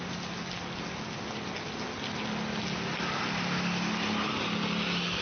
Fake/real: real